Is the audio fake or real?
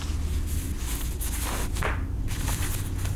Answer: real